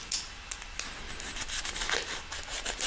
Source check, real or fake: real